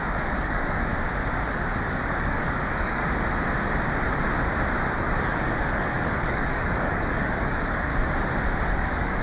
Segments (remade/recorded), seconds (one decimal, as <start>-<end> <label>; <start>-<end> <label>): 0.0-0.9 remade; 0.9-1.5 recorded; 1.5-3.0 remade; 3.0-4.9 recorded; 4.9-7.9 remade; 7.9-8.7 recorded; 8.7-9.2 remade